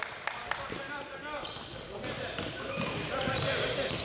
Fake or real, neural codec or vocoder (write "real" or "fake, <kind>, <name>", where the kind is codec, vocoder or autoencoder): real